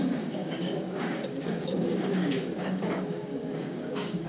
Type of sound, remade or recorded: remade